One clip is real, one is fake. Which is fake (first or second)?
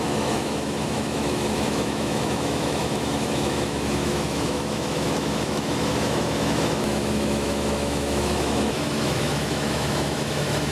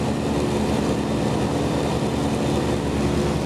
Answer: first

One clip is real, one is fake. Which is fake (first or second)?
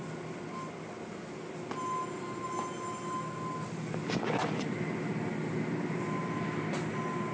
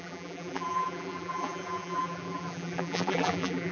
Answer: second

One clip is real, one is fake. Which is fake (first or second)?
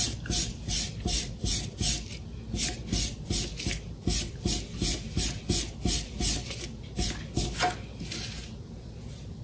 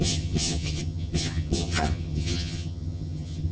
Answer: second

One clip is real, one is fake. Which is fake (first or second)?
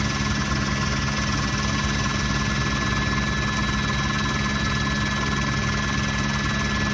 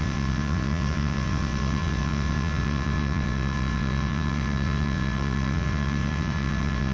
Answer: second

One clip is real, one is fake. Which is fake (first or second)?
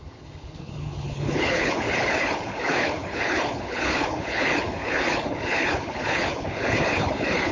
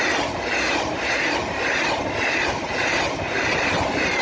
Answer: first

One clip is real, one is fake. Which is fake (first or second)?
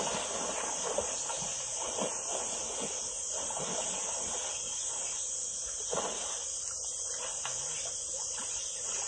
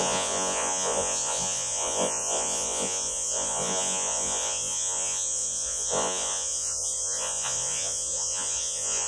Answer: second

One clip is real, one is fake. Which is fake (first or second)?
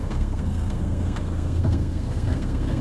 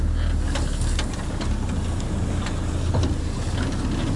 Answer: first